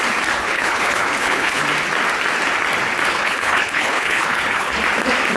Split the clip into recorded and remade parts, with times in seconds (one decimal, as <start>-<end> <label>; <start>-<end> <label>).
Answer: 0.0-0.4 recorded; 0.4-1.6 remade; 1.6-3.1 recorded; 3.1-4.7 remade; 4.7-5.4 recorded